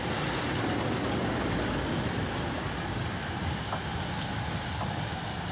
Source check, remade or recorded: recorded